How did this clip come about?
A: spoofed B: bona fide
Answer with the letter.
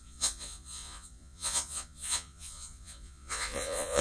A